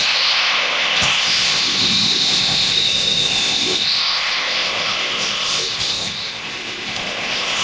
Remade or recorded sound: remade